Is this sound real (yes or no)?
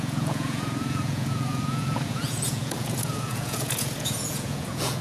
no